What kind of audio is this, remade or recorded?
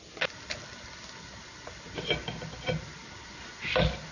recorded